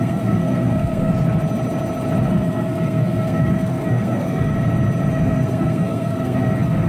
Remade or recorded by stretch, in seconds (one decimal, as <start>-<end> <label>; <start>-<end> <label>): 0.0-1.1 remade; 1.1-2.2 recorded; 2.2-4.5 remade; 4.5-5.1 recorded; 5.1-6.9 remade